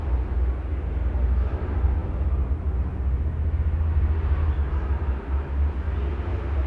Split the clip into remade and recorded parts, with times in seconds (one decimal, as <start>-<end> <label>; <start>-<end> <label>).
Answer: 0.0-6.7 recorded